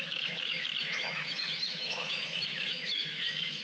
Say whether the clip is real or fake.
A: fake